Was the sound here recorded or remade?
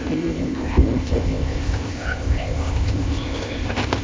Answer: remade